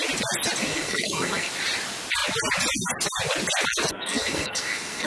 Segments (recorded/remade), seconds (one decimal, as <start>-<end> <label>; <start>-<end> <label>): 0.0-0.6 recorded; 0.6-1.5 remade; 1.5-3.9 recorded; 3.9-5.1 remade